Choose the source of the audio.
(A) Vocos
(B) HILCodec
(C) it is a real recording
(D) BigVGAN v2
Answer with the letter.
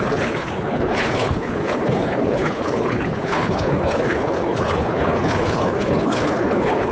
B